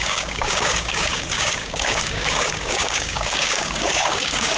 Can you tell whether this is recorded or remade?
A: remade